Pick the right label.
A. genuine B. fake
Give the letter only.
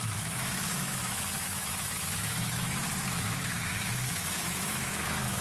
B